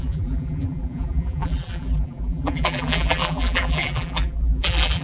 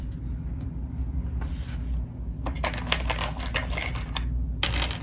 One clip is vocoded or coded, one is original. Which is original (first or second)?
second